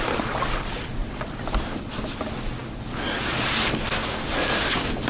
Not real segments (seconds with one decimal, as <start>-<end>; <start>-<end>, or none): 1.0-1.8